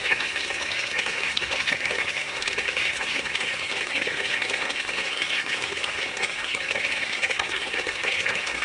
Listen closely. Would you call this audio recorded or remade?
remade